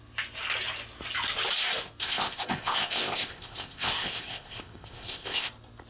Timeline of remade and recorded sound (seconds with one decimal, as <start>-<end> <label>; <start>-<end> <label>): 0.0-2.0 recorded; 2.0-5.5 remade; 5.5-5.9 recorded